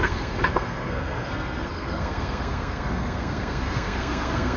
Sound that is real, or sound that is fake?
fake